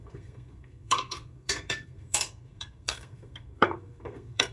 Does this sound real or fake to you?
fake